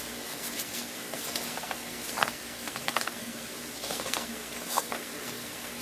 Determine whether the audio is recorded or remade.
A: remade